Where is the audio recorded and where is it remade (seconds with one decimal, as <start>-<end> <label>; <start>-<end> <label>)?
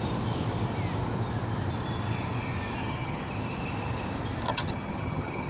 0.0-2.8 recorded; 2.8-3.3 remade; 3.3-4.5 recorded; 4.5-5.5 remade